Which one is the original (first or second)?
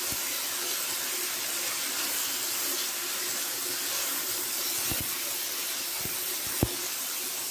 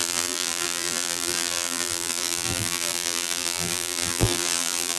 first